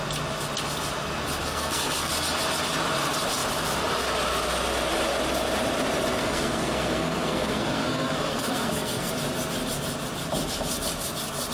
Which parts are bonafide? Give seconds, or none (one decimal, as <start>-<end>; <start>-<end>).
0.0-1.4; 2.1-6.1; 9.1-11.5